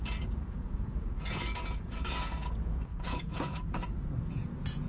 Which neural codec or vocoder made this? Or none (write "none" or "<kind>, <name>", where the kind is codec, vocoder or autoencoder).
vocoder, Vocos